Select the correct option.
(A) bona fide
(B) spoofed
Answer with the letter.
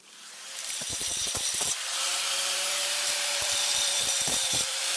B